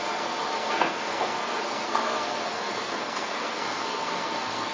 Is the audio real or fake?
fake